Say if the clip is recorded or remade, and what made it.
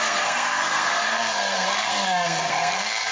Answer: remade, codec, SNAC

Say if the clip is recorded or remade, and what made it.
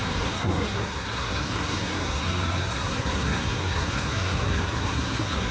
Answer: remade, codec, SNAC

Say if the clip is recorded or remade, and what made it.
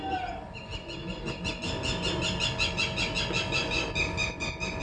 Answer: recorded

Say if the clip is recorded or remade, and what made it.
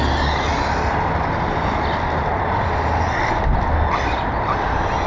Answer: recorded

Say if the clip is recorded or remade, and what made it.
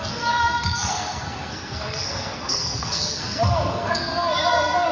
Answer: remade, codec, SNAC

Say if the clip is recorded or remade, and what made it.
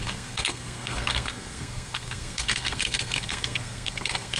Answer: remade, codec, SNAC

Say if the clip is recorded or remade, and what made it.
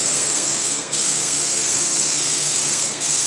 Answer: remade, codec, SNAC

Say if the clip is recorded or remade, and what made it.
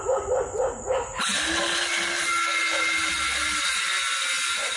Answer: recorded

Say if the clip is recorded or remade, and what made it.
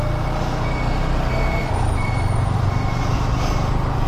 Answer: recorded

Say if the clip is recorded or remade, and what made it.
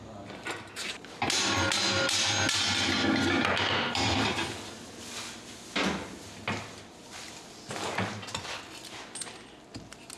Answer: recorded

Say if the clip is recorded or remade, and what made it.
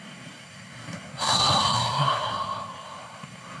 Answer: remade, codec, SNAC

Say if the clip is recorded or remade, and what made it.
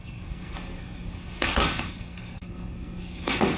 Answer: remade, codec, SNAC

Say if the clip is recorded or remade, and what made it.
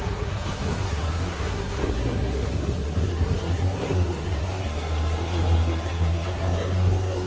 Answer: remade, codec, SNAC